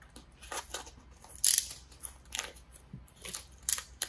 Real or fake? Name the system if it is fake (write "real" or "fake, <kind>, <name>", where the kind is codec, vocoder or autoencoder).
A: real